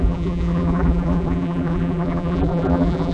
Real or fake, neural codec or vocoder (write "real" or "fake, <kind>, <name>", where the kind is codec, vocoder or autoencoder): fake, vocoder, BigVGAN v2